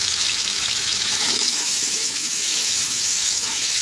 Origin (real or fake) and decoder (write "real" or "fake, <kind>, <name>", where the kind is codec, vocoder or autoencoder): fake, autoencoder, DAC-VAE